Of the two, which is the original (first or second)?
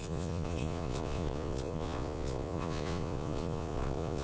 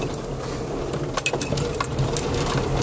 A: second